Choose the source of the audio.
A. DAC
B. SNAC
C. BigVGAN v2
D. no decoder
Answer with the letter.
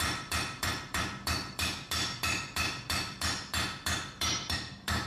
C